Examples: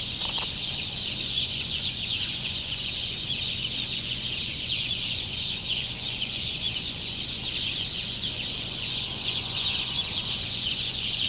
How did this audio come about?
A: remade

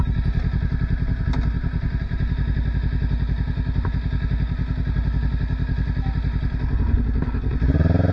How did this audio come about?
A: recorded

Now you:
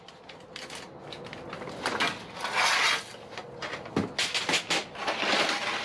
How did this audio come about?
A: recorded